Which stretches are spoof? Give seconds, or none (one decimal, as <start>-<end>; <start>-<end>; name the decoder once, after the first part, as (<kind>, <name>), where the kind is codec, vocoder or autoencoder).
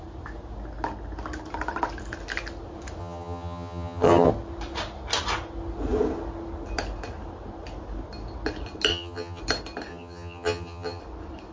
3.0-4.3 (vocoder, HiFi-GAN); 8.9-9.4; 9.9-11.0